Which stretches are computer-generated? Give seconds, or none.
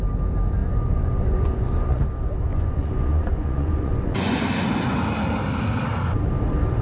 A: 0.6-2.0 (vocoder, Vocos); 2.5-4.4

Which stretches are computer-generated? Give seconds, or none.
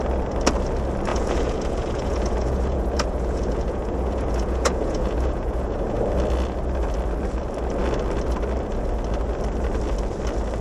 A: 1.1-6.0 (vocoder, Vocos)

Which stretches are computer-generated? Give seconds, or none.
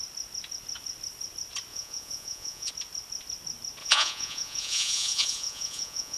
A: 1.7-2.7 (vocoder, Vocos); 3.8-6.2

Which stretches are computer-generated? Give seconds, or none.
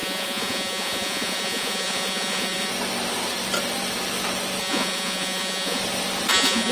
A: 0.0-2.7 (vocoder, Vocos); 4.6-5.8; 6.3-6.7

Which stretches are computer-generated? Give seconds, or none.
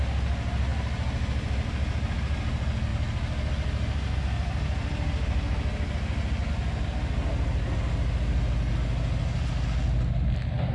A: none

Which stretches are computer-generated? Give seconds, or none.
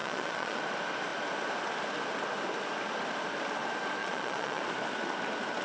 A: 0.0-0.6 (vocoder, Vocos); 4.0-4.6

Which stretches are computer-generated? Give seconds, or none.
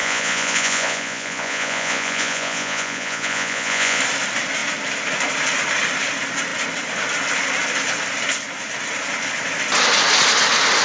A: 0.0-4.0 (vocoder, Vocos)